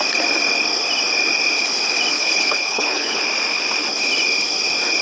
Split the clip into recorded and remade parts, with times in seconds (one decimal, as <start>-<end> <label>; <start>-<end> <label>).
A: 0.0-2.1 recorded; 2.1-3.2 remade; 3.2-5.0 recorded